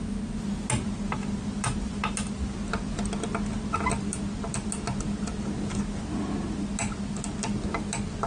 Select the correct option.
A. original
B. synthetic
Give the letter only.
A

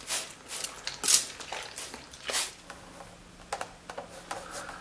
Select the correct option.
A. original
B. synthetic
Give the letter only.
A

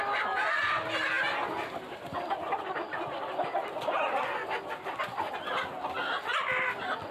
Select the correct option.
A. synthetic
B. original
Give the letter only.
B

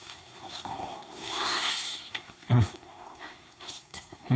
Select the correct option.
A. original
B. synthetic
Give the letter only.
B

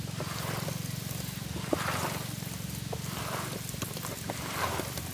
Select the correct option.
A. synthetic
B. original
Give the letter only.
B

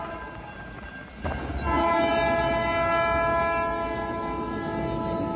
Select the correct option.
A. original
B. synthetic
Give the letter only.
A